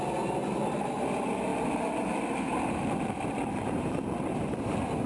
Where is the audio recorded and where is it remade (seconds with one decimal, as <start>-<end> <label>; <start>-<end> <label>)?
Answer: 0.0-0.4 recorded; 0.4-0.9 remade; 0.9-1.5 recorded; 1.5-4.6 remade; 4.6-5.1 recorded